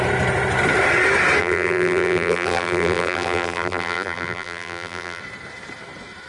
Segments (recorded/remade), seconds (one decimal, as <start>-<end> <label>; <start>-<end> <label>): 0.0-1.4 recorded; 1.4-5.2 remade; 5.2-6.3 recorded